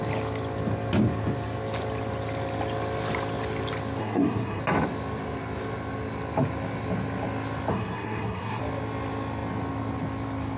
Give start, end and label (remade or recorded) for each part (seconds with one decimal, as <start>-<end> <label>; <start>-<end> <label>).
0.0-4.0 recorded; 4.0-4.6 remade; 4.6-7.7 recorded; 7.7-8.6 remade; 8.6-10.6 recorded

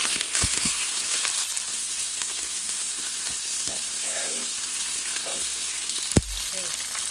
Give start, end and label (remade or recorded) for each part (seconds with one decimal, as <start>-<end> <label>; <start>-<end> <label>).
0.0-1.2 remade; 1.2-1.7 recorded; 1.7-6.0 remade; 6.0-7.1 recorded